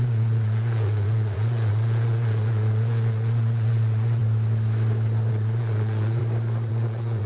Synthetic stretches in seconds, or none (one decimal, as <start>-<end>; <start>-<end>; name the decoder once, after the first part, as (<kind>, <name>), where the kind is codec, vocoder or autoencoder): 0.0-4.2 (vocoder, Vocos); 5.3-6.2; 6.7-7.3